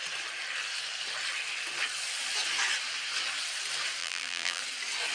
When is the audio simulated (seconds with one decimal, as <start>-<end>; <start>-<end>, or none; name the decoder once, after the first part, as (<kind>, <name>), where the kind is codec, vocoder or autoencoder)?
4.0-4.6 (vocoder, BigVGAN v2)